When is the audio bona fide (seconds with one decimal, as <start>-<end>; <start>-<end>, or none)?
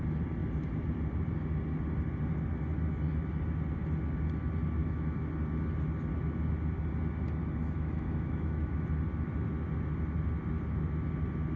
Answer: 0.0-4.8; 5.3-7.6; 8.7-11.6